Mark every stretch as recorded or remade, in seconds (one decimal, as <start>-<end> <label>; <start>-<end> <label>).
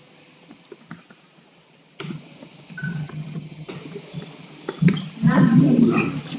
0.0-3.0 recorded; 3.0-3.7 remade; 3.7-6.4 recorded